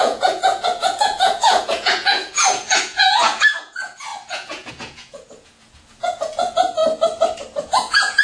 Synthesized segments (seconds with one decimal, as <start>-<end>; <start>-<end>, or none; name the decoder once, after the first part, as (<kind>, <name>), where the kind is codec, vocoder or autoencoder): 0.0-6.8 (vocoder, Vocos); 7.6-8.2